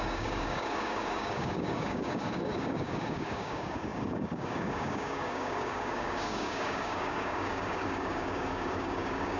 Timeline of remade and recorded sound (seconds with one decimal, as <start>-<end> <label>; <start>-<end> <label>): 0.0-9.4 remade